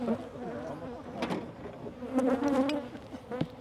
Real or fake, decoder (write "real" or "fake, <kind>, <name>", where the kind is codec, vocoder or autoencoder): real